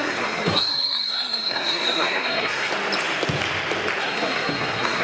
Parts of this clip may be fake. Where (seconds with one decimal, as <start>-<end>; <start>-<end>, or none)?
0.0-2.7; 4.0-5.0